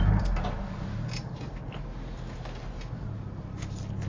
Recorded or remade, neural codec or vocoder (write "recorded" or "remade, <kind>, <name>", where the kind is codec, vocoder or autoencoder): recorded